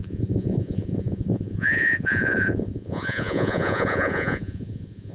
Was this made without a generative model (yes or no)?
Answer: no